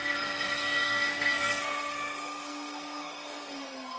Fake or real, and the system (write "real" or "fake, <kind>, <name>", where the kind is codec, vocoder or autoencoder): fake, codec, SNAC